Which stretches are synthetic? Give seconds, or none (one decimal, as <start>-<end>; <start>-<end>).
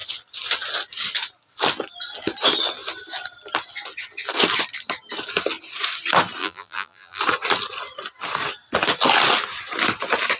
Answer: 6.4-7.2